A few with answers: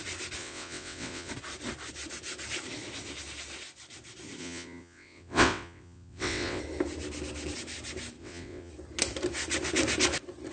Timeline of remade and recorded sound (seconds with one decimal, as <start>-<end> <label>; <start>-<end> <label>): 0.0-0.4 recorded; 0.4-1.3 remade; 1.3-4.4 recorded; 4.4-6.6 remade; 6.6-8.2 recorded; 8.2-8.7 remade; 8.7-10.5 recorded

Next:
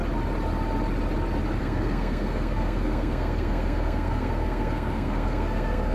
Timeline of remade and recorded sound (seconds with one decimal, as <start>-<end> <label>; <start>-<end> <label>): 0.0-1.6 recorded; 1.6-5.9 remade

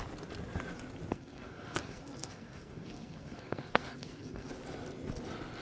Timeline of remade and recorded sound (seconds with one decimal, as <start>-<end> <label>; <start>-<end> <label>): 0.0-1.1 recorded; 1.1-4.5 remade; 4.5-5.6 recorded

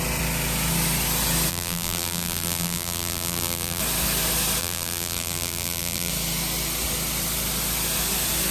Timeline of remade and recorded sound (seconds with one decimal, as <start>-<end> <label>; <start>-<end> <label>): 0.0-1.5 recorded; 1.5-3.8 remade; 3.8-4.6 recorded; 4.6-6.1 remade; 6.1-8.5 recorded

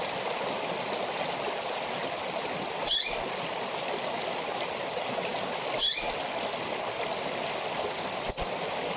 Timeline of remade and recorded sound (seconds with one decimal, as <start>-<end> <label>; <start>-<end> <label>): 0.0-9.0 recorded

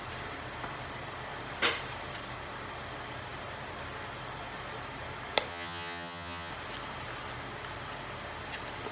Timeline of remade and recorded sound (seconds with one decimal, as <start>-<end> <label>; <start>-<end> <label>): 0.0-5.5 recorded; 5.5-6.5 remade; 6.5-8.9 recorded

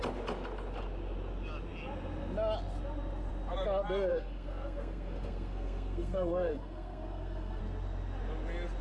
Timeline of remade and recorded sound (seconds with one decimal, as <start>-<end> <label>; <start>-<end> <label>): 0.0-4.1 recorded; 4.1-7.6 remade; 7.6-8.8 recorded